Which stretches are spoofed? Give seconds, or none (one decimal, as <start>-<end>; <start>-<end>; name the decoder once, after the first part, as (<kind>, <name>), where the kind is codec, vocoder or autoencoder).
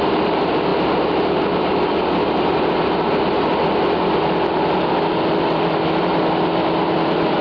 none